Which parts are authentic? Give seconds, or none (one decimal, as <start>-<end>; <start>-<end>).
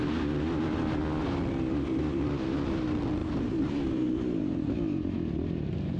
0.0-3.2; 4.7-6.0